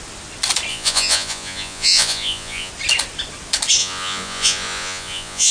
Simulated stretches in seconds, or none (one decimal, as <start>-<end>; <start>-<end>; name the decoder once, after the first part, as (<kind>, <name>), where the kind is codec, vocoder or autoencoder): 0.7-2.7 (vocoder, Vocos); 3.8-5.5